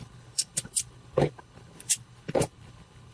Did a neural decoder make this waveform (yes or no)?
yes